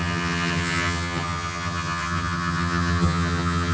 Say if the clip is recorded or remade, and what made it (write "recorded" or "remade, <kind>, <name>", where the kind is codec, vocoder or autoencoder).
remade, vocoder, HiFi-GAN